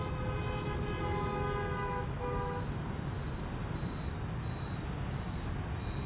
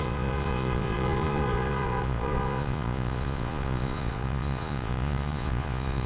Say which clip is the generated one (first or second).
second